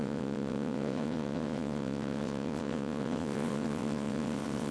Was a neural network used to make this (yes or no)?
yes